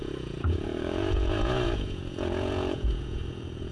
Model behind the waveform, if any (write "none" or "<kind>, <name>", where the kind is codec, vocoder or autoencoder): vocoder, Vocos